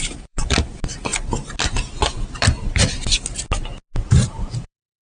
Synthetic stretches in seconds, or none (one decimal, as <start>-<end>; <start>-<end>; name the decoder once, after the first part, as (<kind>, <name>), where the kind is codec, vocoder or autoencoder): 0.0-1.1 (vocoder, BigVGAN v2); 4.1-5.0

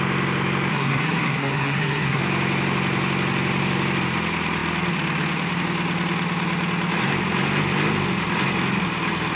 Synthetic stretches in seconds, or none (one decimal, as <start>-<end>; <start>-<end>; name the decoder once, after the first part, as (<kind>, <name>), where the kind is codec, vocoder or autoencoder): 0.7-2.2 (codec, SNAC)

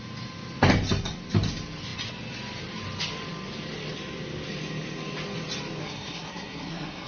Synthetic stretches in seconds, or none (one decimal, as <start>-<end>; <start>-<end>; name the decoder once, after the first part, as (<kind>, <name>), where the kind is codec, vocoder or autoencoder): 5.8-7.1 (codec, SNAC)

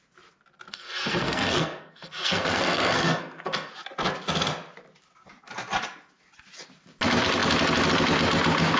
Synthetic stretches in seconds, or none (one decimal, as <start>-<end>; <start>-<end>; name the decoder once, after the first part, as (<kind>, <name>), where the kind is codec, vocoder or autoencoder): 0.7-3.7 (codec, SNAC)

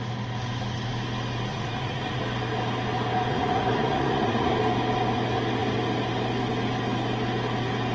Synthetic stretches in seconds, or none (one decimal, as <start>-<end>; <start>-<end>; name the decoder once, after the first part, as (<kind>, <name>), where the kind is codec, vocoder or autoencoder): 1.5-2.2 (vocoder, Vocos); 3.3-4.5